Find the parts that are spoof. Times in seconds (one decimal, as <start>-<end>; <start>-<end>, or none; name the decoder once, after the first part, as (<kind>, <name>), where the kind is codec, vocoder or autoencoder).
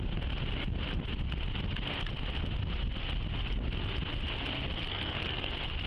4.8-5.5 (codec, SNAC)